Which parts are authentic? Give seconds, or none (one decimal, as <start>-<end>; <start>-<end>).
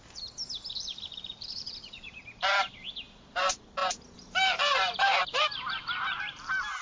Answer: 2.2-3.2